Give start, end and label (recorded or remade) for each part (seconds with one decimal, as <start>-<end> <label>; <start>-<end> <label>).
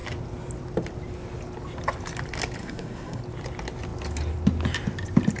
0.0-2.6 recorded; 2.6-3.2 remade; 3.2-5.4 recorded